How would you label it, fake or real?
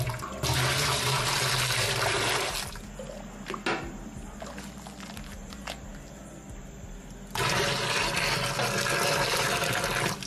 real